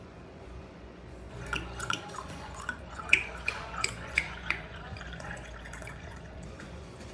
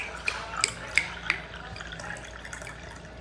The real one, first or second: second